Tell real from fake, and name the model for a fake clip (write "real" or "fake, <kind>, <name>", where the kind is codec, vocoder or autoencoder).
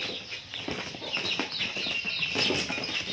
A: real